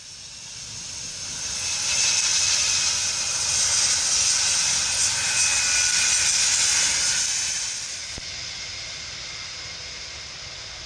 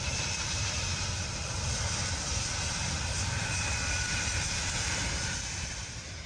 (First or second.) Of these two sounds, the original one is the first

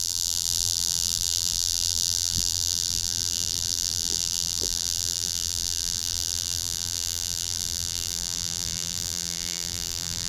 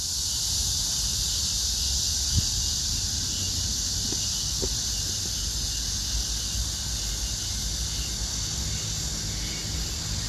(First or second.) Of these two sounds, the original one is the second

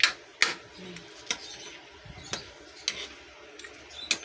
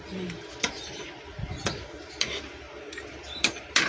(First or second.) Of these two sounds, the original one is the first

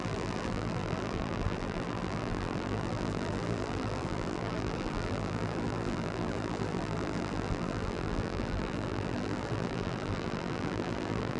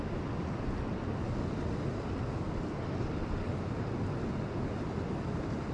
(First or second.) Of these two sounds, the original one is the second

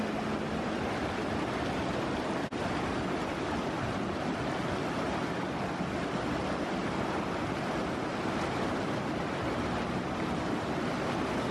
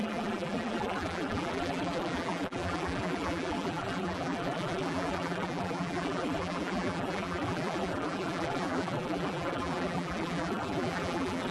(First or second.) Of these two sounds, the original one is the first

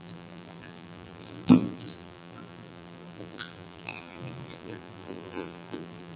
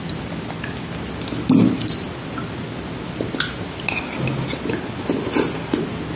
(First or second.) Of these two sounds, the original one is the second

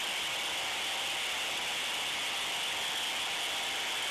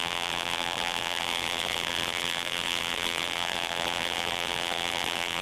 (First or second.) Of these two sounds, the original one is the first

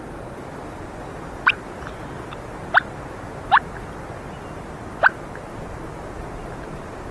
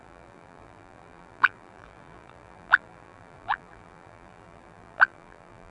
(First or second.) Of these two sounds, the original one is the first